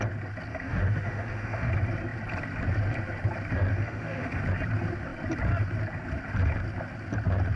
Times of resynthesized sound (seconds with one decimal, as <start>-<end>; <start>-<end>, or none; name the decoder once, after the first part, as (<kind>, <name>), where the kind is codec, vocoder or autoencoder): 0.5-1.7 (autoencoder, DAC-VAE); 3.7-4.4